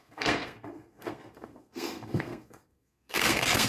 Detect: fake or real fake